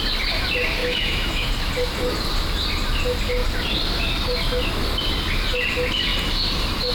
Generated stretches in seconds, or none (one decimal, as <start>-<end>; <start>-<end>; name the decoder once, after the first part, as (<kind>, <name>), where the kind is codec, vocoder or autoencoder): 0.8-1.5 (autoencoder, DAC-VAE)